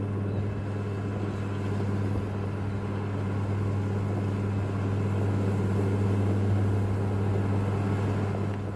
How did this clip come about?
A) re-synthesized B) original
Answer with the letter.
B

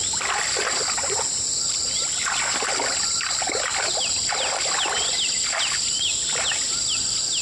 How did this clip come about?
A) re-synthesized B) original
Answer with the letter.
B